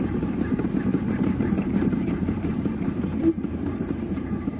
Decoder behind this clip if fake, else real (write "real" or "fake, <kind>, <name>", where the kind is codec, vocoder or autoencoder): fake, vocoder, BigVGAN v2